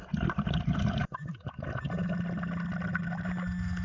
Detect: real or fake real